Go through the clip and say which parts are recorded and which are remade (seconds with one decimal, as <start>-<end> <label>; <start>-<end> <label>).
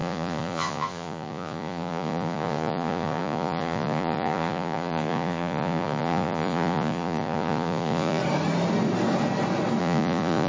0.0-8.2 remade; 8.2-9.8 recorded; 9.8-10.5 remade